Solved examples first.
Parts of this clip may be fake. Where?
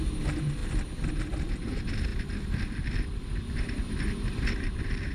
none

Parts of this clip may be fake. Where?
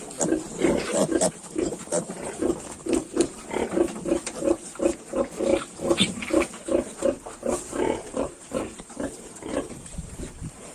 1.0-2.4; 5.5-6.2; 8.0-10.7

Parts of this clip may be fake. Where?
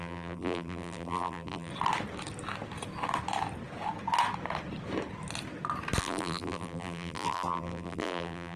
0.0-1.7; 6.0-8.6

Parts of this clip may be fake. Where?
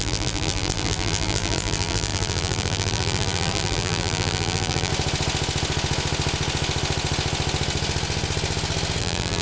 0.0-4.9; 9.0-9.4